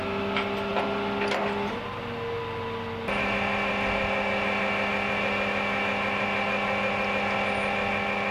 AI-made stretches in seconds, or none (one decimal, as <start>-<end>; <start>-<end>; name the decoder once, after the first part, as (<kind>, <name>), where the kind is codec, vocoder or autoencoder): none